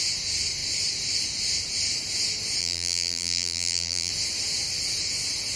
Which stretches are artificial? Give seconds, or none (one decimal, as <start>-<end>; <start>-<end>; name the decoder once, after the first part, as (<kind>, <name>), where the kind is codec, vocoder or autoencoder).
2.6-4.1 (vocoder, BigVGAN v2)